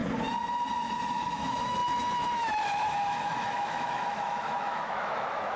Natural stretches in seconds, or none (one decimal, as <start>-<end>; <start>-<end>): 0.0-1.1